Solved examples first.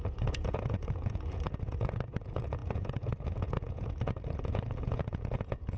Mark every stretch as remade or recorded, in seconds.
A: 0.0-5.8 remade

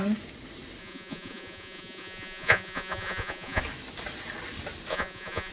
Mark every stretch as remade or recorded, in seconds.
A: 0.0-0.8 recorded; 0.8-3.6 remade; 3.6-4.9 recorded; 4.9-5.5 remade